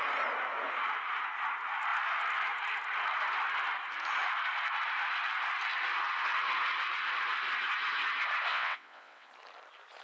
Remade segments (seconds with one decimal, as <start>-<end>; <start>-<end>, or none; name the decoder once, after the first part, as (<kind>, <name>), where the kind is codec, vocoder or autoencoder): 8.5-9.3 (vocoder, WaveNeXt)